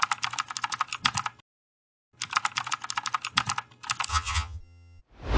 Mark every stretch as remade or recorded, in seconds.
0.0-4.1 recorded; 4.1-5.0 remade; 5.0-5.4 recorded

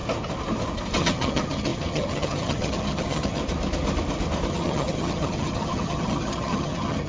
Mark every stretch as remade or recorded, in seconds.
0.0-1.0 recorded; 1.0-3.4 remade; 3.4-4.5 recorded; 4.5-7.1 remade

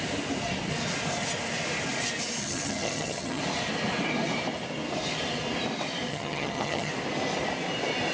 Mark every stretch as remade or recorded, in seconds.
0.0-2.4 recorded; 2.4-3.4 remade; 3.4-6.1 recorded; 6.1-6.9 remade; 6.9-8.1 recorded

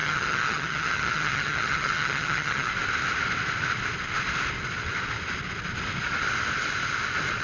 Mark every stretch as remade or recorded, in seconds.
0.0-2.7 remade; 2.7-7.4 recorded

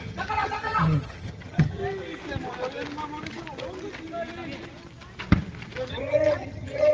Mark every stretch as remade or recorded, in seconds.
0.0-1.8 remade; 1.8-5.9 recorded; 5.9-6.9 remade

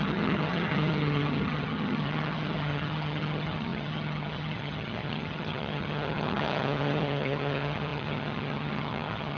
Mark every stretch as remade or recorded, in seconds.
0.0-9.4 remade

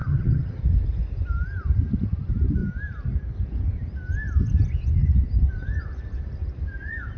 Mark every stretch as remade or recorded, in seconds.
0.0-0.6 remade; 0.6-7.2 recorded

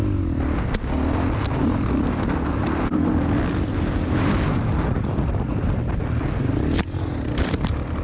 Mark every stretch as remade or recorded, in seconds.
0.0-8.0 recorded